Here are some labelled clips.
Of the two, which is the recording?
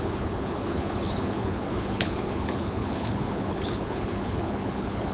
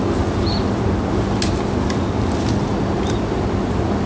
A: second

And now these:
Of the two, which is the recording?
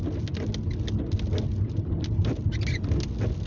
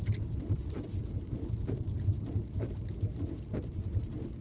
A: first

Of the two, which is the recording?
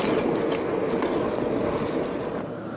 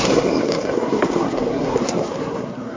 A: first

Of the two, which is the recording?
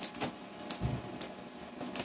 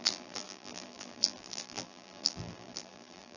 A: first